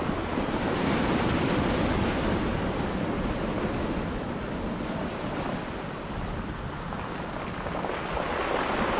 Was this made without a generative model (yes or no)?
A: yes